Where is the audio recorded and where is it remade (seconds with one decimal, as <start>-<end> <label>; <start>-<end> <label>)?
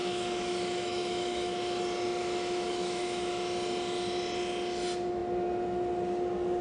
0.0-1.8 remade; 1.8-2.2 recorded; 2.2-3.3 remade; 3.3-6.6 recorded